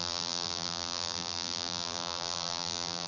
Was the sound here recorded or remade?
remade